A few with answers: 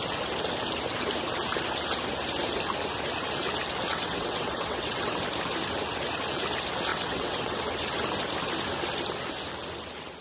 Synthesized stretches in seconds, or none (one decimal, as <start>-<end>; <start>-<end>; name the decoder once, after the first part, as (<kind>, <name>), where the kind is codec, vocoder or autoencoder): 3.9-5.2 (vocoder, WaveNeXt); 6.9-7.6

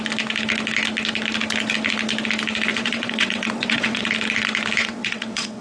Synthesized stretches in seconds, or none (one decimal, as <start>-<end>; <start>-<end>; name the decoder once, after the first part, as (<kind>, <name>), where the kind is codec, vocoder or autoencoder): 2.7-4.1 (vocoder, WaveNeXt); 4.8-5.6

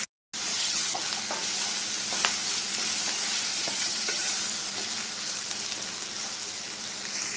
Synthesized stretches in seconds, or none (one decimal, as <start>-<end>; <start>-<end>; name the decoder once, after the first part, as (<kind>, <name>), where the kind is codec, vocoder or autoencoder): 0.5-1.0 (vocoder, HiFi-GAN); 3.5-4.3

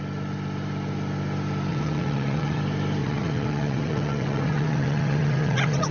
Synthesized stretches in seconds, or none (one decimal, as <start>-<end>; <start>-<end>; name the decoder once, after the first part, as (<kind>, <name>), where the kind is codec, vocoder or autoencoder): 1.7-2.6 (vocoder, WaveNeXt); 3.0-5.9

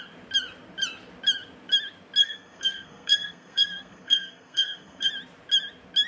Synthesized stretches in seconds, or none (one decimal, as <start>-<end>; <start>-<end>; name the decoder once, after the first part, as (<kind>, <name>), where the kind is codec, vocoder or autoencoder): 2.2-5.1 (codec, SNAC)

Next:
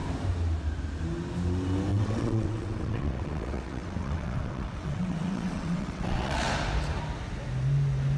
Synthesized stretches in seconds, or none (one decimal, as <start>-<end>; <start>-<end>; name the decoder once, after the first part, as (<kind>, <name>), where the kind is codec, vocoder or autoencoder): 1.9-6.5 (vocoder, WaveNeXt)

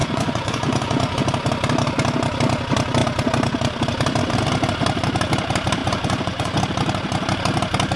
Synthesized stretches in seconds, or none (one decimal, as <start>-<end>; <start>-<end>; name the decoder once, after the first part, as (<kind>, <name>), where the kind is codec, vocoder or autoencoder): 0.0-1.2 (vocoder, Vocos); 5.8-6.6